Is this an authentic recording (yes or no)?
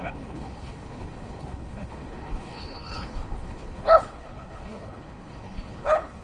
no